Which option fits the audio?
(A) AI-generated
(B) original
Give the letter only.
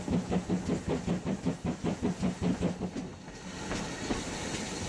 B